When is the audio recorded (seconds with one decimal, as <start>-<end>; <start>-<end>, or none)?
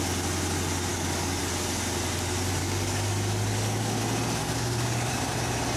0.0-0.9; 1.4-2.6; 4.0-4.4; 5.1-5.8